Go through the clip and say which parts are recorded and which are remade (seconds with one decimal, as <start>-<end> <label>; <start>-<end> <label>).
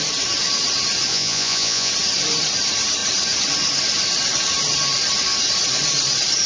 0.0-1.1 recorded; 1.1-1.9 remade; 1.9-6.5 recorded